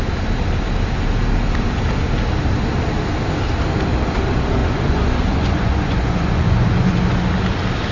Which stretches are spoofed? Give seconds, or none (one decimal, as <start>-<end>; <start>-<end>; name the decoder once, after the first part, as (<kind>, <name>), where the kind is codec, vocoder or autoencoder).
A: 4.6-7.0 (vocoder, Vocos)